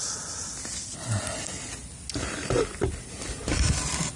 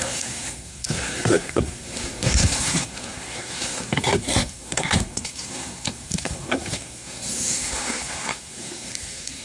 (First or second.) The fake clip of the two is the second